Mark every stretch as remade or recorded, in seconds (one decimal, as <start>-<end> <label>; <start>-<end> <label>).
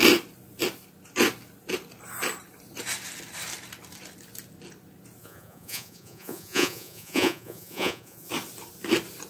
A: 0.0-5.2 recorded; 5.2-8.3 remade; 8.3-9.3 recorded